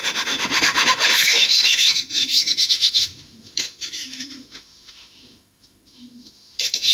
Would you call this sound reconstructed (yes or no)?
yes